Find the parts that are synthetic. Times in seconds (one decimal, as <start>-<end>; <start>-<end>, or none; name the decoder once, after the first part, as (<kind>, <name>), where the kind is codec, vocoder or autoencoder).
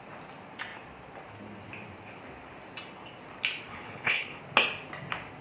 3.7-4.4 (codec, HILCodec)